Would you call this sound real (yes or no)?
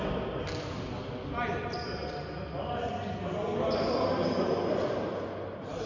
yes